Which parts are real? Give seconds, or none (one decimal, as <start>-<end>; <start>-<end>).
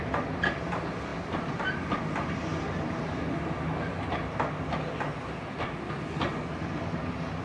0.0-7.4